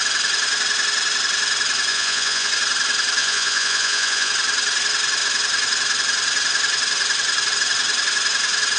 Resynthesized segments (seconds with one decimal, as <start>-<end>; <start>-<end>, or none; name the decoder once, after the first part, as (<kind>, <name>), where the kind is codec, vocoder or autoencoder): 1.9-2.5 (vocoder, Vocos); 3.2-4.3